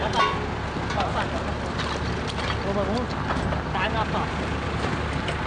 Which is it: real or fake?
real